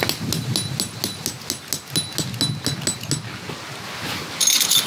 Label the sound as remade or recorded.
recorded